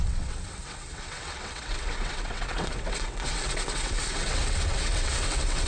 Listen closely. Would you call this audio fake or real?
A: fake